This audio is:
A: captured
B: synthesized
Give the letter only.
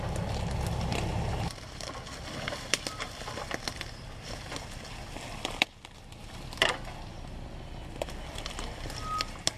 A